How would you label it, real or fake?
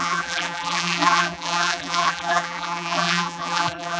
fake